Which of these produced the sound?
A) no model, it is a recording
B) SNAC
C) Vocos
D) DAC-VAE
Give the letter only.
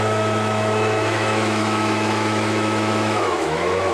D